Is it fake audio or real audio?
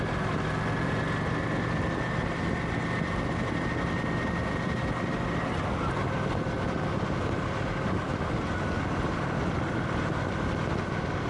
real